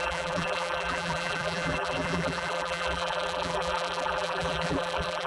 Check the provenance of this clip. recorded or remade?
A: remade